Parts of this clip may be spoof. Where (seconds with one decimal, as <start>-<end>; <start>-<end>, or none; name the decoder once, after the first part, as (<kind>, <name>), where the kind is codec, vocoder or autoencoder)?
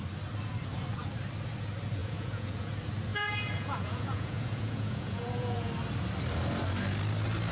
2.0-2.7 (vocoder, Vocos); 3.1-5.7